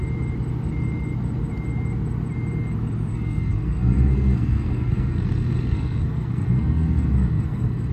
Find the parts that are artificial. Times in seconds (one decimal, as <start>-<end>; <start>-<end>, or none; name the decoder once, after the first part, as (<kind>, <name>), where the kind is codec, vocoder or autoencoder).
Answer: 3.1-7.9 (codec, SNAC)